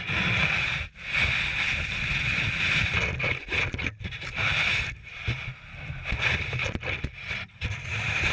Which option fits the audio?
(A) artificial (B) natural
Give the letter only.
B